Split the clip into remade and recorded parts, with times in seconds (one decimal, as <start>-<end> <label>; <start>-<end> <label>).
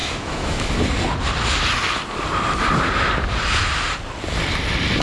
0.0-0.7 remade; 0.7-5.0 recorded